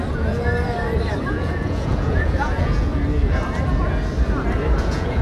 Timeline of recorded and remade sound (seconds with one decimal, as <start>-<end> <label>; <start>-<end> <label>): 0.0-0.5 remade; 0.5-1.3 recorded; 1.3-2.9 remade; 2.9-4.8 recorded; 4.8-5.2 remade